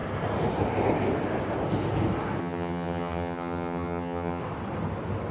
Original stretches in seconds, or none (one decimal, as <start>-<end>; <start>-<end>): 0.0-2.4; 4.4-5.3